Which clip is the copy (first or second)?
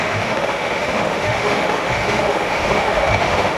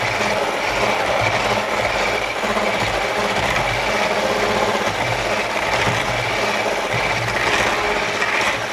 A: first